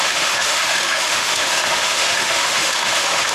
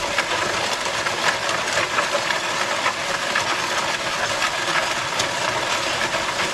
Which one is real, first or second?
second